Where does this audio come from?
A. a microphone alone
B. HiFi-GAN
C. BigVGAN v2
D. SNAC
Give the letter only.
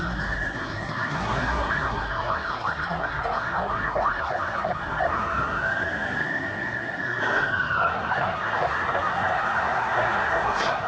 D